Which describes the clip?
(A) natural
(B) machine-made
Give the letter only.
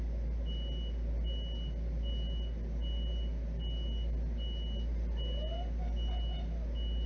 A